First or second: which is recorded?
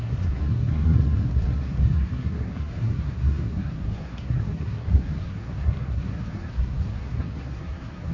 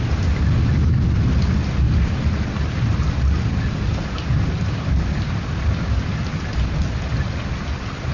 second